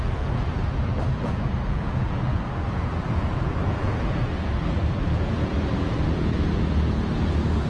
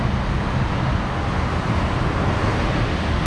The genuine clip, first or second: second